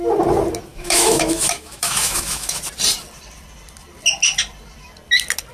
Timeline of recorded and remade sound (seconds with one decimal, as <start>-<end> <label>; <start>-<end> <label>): 0.0-0.7 recorded; 0.7-2.6 remade; 2.6-5.5 recorded